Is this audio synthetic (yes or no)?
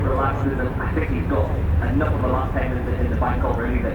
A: no